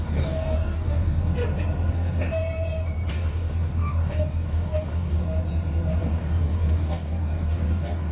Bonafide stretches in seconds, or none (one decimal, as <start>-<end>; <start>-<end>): 1.3-1.9; 2.4-3.1; 5.2-6.0